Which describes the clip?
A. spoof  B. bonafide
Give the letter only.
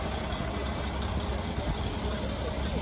B